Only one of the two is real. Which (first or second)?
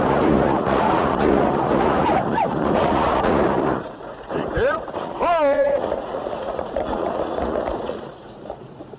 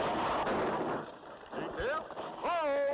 second